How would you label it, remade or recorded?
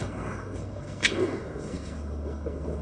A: remade